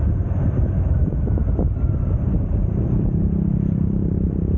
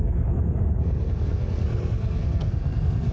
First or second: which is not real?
second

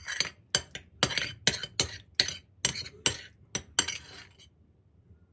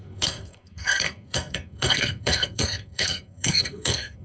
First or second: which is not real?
second